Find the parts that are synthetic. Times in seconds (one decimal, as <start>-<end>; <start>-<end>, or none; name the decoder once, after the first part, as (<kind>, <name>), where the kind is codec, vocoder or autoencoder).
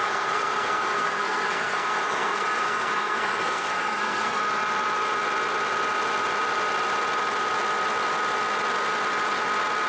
0.0-4.4 (codec, SNAC)